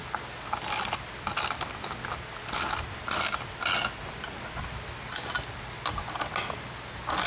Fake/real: real